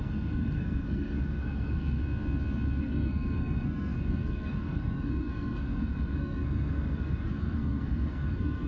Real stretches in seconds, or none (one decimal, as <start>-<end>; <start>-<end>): 2.0-2.8

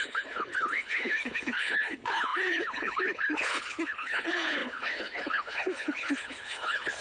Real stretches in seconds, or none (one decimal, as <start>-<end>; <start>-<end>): none